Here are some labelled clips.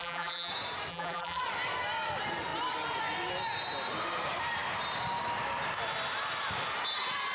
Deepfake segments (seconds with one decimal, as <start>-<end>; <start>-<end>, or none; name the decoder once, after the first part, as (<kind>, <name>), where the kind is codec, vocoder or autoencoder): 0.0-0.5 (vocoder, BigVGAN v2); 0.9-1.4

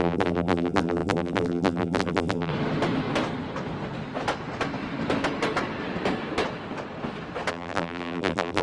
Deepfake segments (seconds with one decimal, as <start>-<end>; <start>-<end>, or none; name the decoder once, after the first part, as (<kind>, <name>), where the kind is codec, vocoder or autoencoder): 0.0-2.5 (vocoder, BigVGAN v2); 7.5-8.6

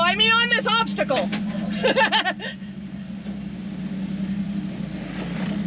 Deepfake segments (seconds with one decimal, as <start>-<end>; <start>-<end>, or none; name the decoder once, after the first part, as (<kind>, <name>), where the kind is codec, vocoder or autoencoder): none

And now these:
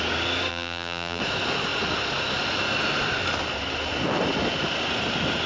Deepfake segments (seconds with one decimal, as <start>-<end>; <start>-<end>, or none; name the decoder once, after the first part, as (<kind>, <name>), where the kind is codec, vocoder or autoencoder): 0.5-1.2 (vocoder, BigVGAN v2)

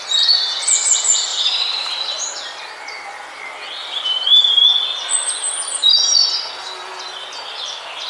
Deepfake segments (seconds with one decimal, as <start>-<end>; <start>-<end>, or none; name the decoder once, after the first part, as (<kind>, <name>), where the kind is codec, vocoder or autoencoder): 1.3-2.3 (vocoder, BigVGAN v2); 3.8-4.4

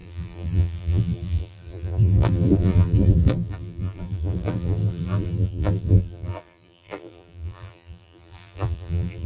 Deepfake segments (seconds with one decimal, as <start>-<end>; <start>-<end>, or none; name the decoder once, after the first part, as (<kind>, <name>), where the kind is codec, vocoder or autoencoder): 0.0-9.3 (vocoder, BigVGAN v2)

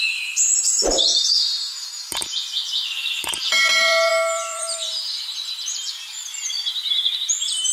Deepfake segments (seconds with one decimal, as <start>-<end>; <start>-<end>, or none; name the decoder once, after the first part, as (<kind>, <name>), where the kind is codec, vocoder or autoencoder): 0.0-7.7 (vocoder, BigVGAN v2)